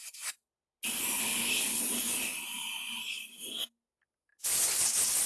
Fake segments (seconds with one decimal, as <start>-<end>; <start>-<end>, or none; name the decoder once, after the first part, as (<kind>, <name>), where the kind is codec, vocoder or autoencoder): 1.2-1.8 (codec, HILCodec)